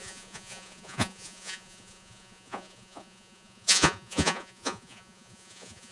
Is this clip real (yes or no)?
no